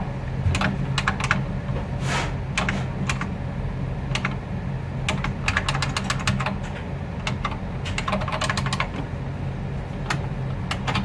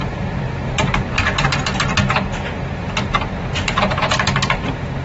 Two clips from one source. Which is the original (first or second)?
first